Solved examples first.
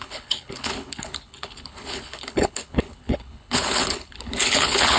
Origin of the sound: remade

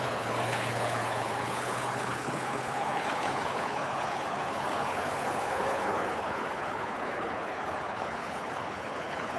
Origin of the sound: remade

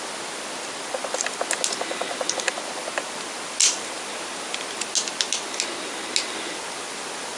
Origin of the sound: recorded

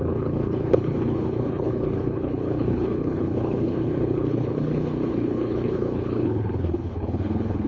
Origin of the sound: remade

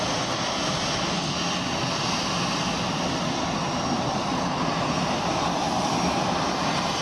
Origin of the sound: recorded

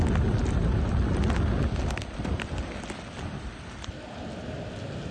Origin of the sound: recorded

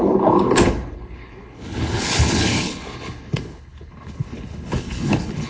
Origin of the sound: remade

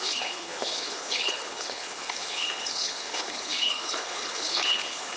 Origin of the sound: remade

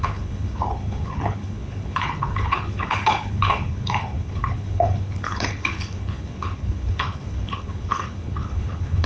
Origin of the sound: remade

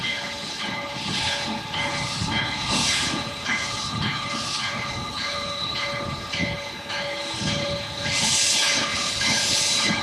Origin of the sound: remade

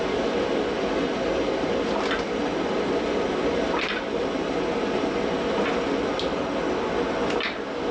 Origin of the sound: recorded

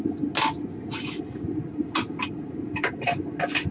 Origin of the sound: recorded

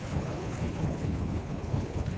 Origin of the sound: remade